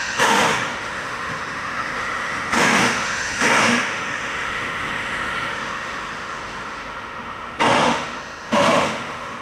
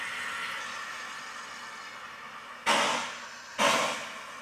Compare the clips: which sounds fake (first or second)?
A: first